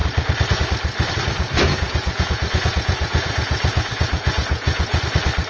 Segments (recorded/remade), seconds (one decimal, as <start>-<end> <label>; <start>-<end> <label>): 0.0-1.7 recorded; 1.7-5.0 remade; 5.0-5.5 recorded

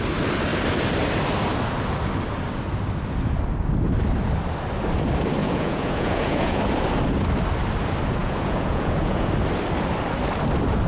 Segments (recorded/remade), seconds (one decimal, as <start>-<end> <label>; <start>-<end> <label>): 0.0-5.4 recorded; 5.4-6.6 remade; 6.6-8.2 recorded; 8.2-9.3 remade; 9.3-10.9 recorded

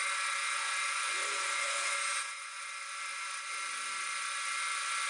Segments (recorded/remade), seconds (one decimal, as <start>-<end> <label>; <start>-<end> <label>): 0.0-0.4 recorded; 0.4-2.7 remade; 2.7-5.1 recorded

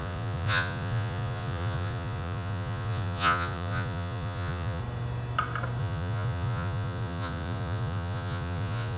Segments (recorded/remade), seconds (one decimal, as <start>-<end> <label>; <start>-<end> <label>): 0.0-4.8 remade; 4.8-5.8 recorded; 5.8-9.0 remade

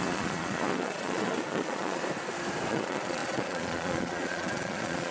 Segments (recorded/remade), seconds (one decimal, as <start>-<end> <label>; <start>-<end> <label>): 0.0-2.0 remade; 2.0-2.7 recorded; 2.7-5.1 remade

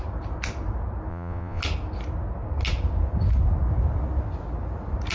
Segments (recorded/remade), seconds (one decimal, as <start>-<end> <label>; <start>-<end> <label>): 0.0-1.1 recorded; 1.1-1.6 remade; 1.6-5.1 recorded

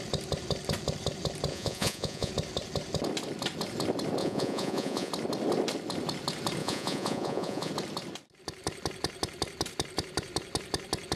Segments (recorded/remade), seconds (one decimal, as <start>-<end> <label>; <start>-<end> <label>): 0.0-1.5 recorded; 1.5-2.3 remade; 2.3-4.2 recorded; 4.2-5.1 remade; 5.1-6.6 recorded; 6.6-7.7 remade; 7.7-11.2 recorded

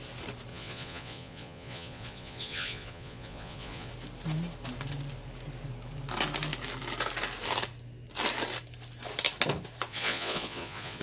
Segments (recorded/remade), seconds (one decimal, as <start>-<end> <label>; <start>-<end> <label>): 0.0-0.5 recorded; 0.5-3.9 remade; 3.9-9.9 recorded; 9.9-11.0 remade